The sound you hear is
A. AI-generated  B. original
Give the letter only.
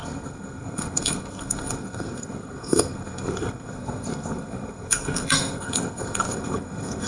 A